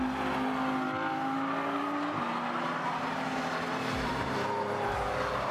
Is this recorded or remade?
recorded